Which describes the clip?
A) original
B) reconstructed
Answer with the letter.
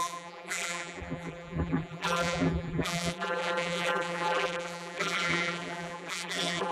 B